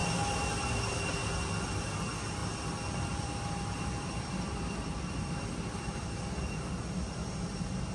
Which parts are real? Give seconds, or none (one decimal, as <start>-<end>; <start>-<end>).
0.0-2.4; 6.7-7.9